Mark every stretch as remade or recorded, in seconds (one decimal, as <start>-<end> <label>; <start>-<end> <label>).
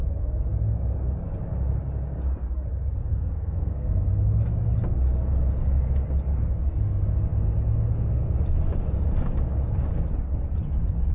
0.0-3.1 recorded; 3.1-4.1 remade; 4.1-11.1 recorded